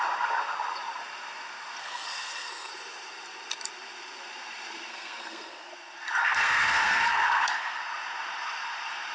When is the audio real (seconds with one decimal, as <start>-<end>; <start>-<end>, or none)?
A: 0.0-1.8; 2.7-4.9; 5.7-6.2; 7.8-9.1